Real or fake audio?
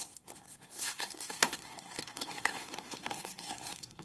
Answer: fake